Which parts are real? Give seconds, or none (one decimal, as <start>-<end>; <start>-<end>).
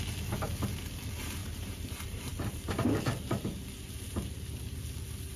0.0-1.4; 2.3-5.4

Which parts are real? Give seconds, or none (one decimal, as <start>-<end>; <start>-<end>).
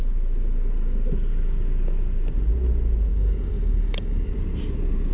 0.0-3.1; 4.3-5.1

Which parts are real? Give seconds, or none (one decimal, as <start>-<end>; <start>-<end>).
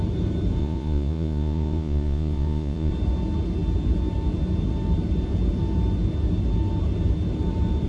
0.0-0.6; 2.9-7.9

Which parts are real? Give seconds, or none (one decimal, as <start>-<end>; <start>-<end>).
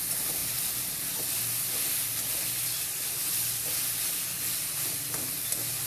0.0-0.4; 3.9-4.6; 5.3-5.9